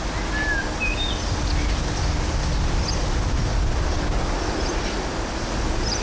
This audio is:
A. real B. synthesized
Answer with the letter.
A